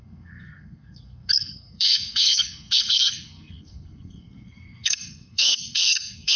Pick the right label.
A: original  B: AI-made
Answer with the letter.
B